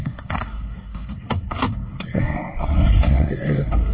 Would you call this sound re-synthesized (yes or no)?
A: yes